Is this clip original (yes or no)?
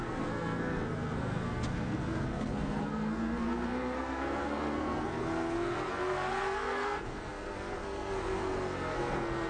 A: no